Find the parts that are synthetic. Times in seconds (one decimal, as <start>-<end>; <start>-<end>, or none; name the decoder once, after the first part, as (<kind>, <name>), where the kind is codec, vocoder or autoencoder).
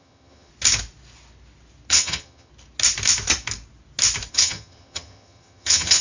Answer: 0.0-0.5 (vocoder, HiFi-GAN); 1.9-2.5; 4.3-6.0